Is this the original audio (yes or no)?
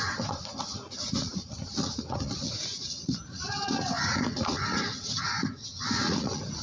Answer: no